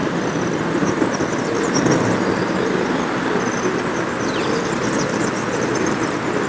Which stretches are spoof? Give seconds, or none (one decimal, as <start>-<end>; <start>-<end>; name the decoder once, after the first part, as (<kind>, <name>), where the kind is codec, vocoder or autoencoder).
none